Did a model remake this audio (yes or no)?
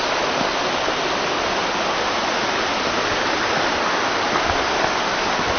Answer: no